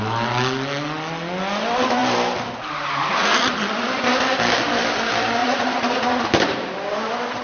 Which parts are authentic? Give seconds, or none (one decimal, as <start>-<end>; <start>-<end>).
0.0-5.4; 6.2-7.4